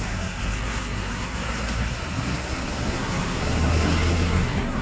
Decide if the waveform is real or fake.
fake